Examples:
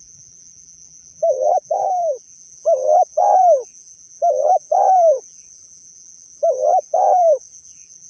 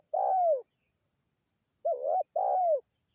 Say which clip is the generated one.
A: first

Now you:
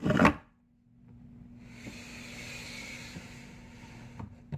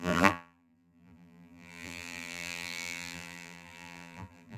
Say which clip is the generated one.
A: second